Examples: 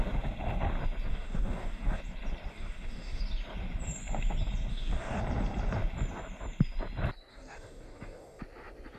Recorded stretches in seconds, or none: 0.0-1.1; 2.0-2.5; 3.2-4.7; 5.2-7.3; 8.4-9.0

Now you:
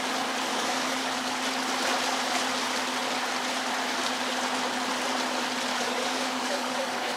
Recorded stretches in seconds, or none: 0.0-0.5; 1.4-5.7